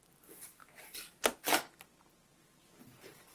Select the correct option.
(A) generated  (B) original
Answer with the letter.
B